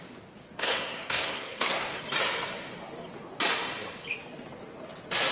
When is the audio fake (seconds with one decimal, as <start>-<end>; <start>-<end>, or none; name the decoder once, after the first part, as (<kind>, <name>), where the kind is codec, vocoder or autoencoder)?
0.4-2.0 (codec, SNAC)